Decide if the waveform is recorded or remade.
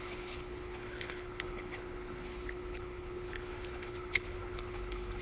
remade